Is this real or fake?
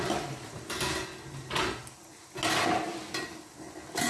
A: real